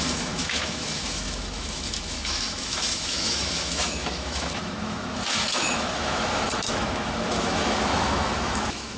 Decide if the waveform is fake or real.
fake